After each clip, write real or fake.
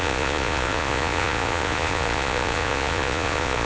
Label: fake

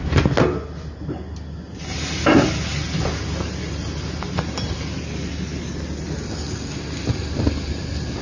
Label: real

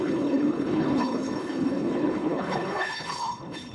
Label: fake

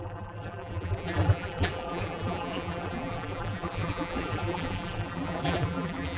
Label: fake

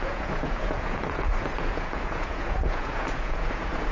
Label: fake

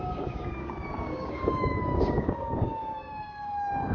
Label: fake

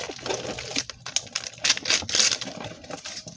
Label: real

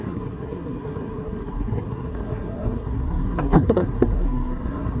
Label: fake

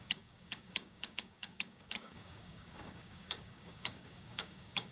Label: fake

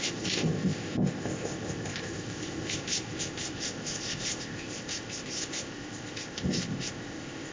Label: fake